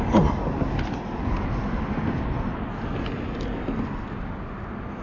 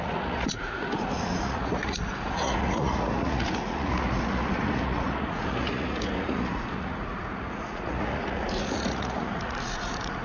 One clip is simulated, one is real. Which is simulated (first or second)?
second